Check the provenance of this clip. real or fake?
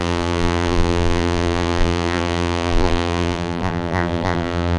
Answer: fake